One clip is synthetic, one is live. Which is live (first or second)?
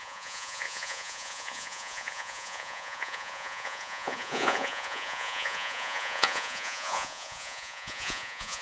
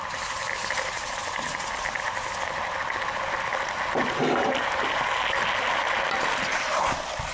second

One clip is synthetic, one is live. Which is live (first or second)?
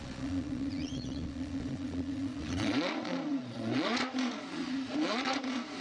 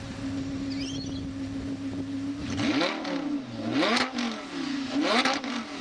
second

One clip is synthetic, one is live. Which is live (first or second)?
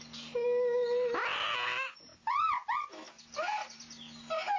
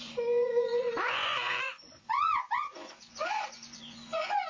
first